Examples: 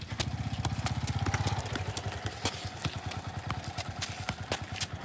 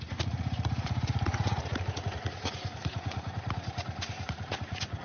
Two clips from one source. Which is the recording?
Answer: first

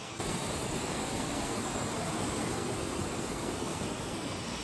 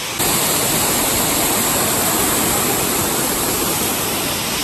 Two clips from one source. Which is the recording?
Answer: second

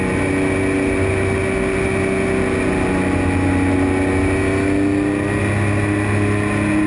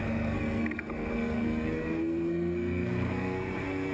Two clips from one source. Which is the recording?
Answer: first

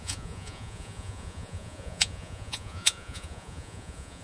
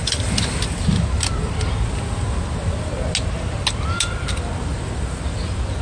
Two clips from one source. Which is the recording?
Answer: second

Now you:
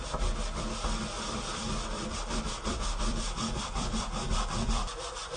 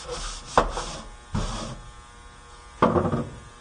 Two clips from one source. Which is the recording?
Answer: second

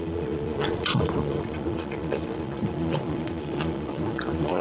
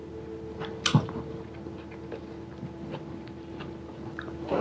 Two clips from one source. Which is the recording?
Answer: second